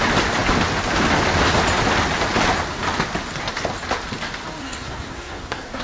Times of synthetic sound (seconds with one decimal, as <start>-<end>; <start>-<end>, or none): 4.6-5.8

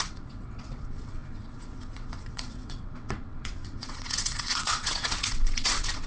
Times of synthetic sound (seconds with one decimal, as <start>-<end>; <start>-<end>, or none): 0.0-6.1

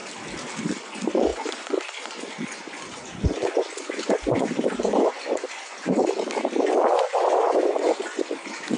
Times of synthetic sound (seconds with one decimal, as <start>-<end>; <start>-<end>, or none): 0.6-6.0; 7.1-8.8